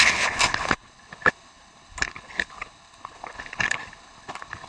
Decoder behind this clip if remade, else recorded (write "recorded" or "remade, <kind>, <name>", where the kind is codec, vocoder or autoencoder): remade, codec, HILCodec